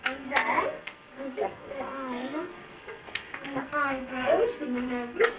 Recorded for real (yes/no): no